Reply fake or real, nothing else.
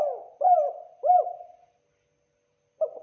fake